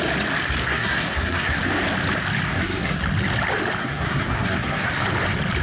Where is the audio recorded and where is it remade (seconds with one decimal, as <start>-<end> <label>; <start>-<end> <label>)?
0.0-0.6 recorded; 0.6-1.6 remade; 1.6-2.5 recorded; 2.5-3.0 remade; 3.0-3.8 recorded; 3.8-4.9 remade; 4.9-5.6 recorded